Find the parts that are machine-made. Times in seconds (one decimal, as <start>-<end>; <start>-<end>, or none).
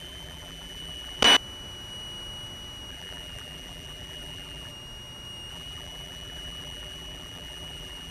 0.0-1.2; 2.9-4.7; 5.5-8.1